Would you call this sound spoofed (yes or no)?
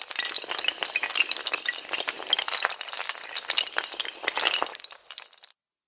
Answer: no